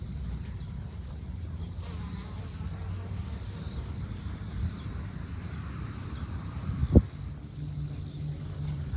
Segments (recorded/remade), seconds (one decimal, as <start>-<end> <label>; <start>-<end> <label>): 0.0-6.8 remade; 6.8-8.6 recorded; 8.6-9.0 remade